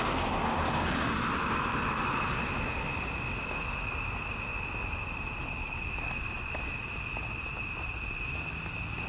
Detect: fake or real real